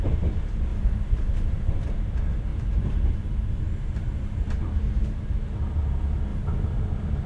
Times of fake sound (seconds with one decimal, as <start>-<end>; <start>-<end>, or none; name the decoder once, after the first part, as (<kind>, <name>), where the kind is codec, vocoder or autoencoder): 0.7-1.9 (vocoder, BigVGAN v2); 2.5-4.5; 6.3-6.8